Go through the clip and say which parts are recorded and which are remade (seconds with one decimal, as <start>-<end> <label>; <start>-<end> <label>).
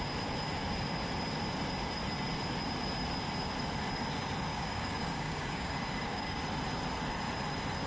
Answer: 0.0-4.5 recorded; 4.5-6.4 remade; 6.4-7.9 recorded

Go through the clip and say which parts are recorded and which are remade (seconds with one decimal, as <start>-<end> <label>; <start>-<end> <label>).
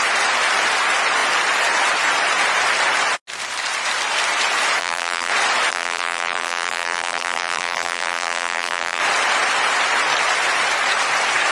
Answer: 0.0-4.8 recorded; 4.8-5.3 remade; 5.3-5.7 recorded; 5.7-9.0 remade; 9.0-11.5 recorded